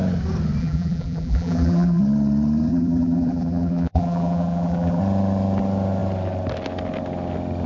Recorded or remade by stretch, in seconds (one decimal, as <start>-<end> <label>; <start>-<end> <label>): 0.0-0.6 recorded; 0.6-2.0 remade; 2.0-2.7 recorded; 2.7-5.0 remade; 5.0-7.7 recorded